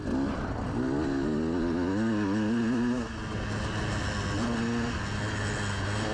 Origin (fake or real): real